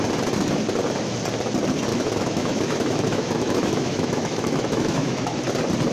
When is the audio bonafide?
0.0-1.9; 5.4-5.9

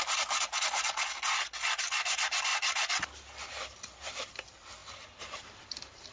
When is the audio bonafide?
0.0-6.1

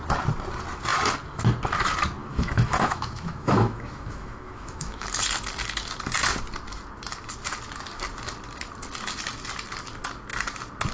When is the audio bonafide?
0.0-2.2; 5.2-10.9

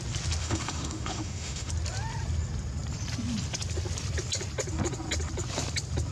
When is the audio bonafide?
0.0-0.4; 1.7-6.1

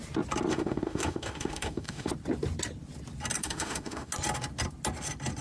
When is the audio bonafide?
0.0-0.5; 2.1-3.4; 4.1-5.4

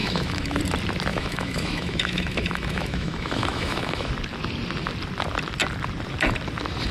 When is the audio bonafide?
0.6-1.1; 4.1-6.9

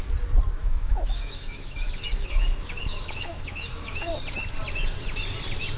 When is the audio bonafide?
0.0-0.6; 4.1-5.8